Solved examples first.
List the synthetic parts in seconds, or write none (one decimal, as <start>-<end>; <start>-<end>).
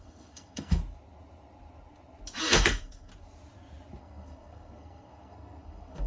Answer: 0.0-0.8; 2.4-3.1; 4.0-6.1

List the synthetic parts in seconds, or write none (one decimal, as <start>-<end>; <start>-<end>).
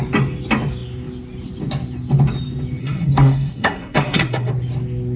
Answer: 2.8-4.5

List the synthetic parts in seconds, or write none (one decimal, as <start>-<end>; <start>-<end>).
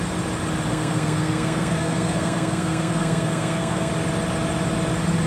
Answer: 0.7-3.9